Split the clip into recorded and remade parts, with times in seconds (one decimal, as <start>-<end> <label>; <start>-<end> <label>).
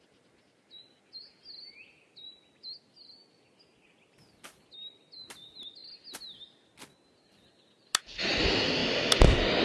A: 0.0-9.6 recorded